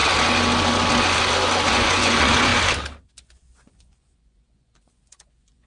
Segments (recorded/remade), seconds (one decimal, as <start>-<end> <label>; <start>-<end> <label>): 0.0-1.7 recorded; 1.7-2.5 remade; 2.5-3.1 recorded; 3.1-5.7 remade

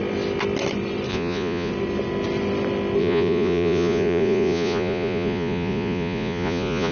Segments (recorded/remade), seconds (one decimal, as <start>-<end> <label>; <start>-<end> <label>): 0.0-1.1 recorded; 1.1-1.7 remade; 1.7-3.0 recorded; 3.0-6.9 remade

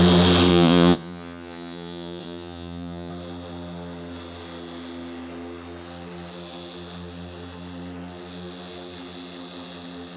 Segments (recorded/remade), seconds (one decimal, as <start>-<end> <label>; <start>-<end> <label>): 0.0-0.5 recorded; 0.5-3.1 remade; 3.1-10.2 recorded

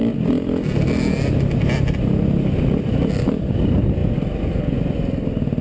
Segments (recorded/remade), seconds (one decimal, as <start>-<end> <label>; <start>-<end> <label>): 0.0-5.6 recorded

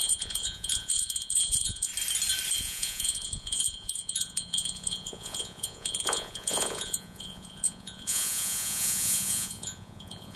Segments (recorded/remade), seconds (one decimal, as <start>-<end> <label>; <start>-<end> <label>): 0.0-1.9 remade; 1.9-2.6 recorded; 2.6-10.4 remade

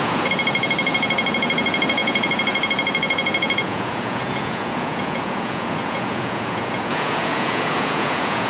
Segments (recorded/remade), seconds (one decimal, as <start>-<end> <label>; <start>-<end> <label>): 0.0-8.5 remade

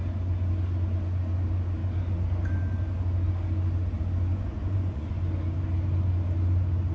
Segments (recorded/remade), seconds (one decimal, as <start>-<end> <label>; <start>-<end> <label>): 0.0-4.3 recorded; 4.3-5.2 remade; 5.2-6.9 recorded